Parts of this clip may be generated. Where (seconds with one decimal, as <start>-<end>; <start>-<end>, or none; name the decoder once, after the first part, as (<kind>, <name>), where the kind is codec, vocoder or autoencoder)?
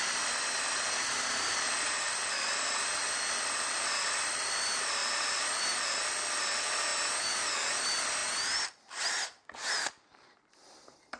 0.0-6.9 (vocoder, BigVGAN v2); 7.7-8.2; 10.2-11.2